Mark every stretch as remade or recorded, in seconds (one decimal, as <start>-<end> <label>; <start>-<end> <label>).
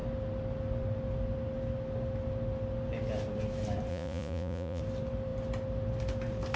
0.0-3.9 recorded; 3.9-4.8 remade; 4.8-6.6 recorded